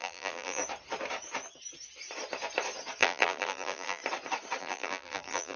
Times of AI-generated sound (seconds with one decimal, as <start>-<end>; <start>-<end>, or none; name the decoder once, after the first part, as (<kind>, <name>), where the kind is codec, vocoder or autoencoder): 0.0-0.6 (vocoder, BigVGAN v2); 3.0-4.0; 4.6-5.6